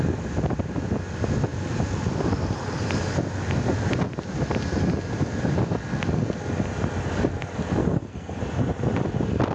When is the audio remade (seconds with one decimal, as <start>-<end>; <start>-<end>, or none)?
7.8-8.4